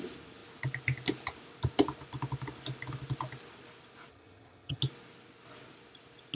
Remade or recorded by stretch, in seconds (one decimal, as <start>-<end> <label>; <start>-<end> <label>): 0.0-4.1 recorded; 4.1-4.8 remade; 4.8-6.3 recorded